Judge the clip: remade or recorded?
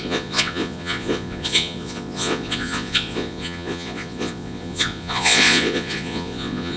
remade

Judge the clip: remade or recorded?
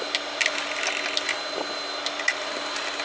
recorded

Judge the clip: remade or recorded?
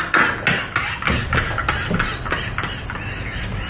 recorded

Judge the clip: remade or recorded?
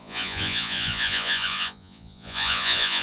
remade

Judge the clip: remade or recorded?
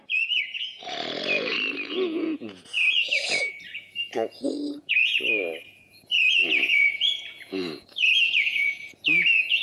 remade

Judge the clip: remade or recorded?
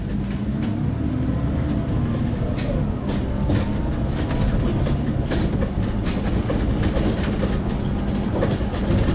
recorded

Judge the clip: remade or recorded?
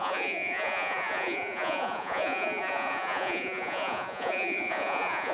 remade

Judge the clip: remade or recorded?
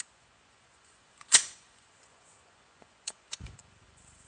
remade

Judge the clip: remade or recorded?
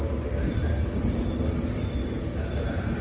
recorded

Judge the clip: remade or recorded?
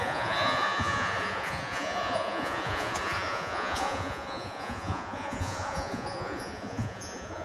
remade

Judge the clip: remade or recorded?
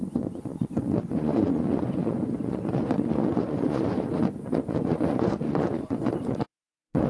remade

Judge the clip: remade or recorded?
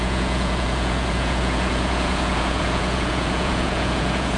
remade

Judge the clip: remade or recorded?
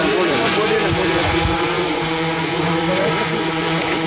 remade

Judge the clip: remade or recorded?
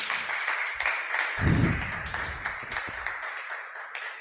recorded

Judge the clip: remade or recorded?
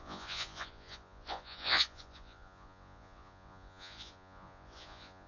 remade